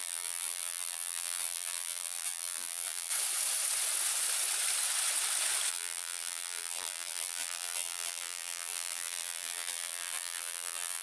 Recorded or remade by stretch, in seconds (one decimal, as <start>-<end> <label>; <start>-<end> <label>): 0.0-3.1 remade; 3.1-5.7 recorded; 5.7-11.0 remade